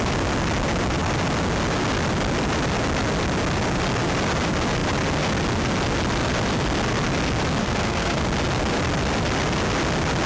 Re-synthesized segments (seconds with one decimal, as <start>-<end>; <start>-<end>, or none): 7.6-8.2